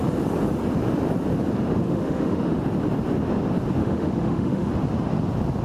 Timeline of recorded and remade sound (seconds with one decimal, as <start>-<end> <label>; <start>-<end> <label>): 0.0-1.8 recorded; 1.8-2.6 remade; 2.6-3.8 recorded; 3.8-4.7 remade; 4.7-5.6 recorded